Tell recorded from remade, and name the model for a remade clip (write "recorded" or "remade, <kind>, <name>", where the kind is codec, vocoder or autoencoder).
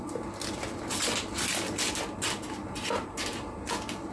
recorded